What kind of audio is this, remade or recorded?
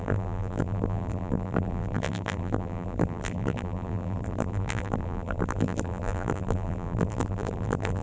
remade